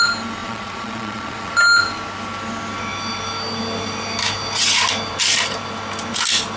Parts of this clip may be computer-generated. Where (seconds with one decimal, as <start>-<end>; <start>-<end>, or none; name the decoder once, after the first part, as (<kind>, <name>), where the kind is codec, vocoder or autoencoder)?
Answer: 0.4-1.5 (vocoder, Vocos)